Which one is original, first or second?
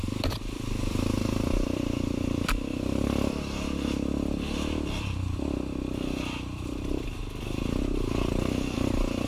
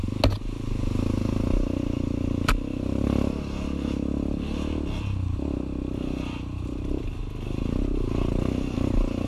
second